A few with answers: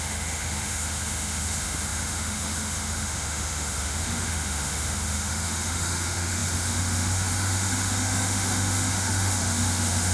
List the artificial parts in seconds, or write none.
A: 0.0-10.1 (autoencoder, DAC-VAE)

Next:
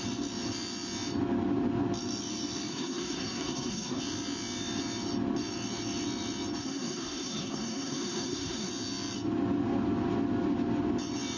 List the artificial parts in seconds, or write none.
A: 2.7-4.0 (codec, SNAC); 6.6-8.7

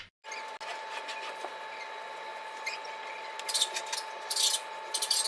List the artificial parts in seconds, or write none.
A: none